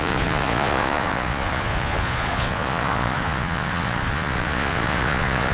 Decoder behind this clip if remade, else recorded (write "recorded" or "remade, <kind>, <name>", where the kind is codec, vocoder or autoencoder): remade, vocoder, Vocos